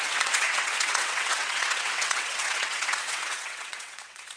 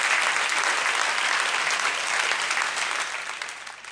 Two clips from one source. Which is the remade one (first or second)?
first